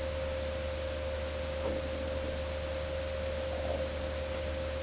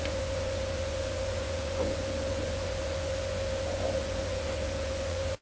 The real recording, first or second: first